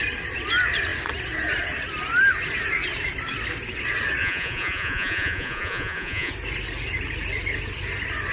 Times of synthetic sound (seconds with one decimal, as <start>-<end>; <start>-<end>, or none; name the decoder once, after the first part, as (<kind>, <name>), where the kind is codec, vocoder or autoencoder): 4.2-6.3 (vocoder, Vocos)